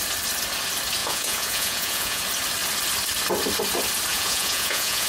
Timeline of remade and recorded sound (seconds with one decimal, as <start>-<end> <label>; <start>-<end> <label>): 0.0-1.0 recorded; 1.0-2.2 remade; 2.2-4.1 recorded; 4.1-5.1 remade